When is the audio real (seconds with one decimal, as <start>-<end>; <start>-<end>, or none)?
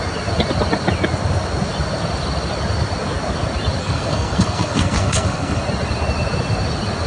0.0-3.8; 5.6-7.1